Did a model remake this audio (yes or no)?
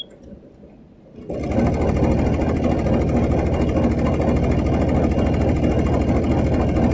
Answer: no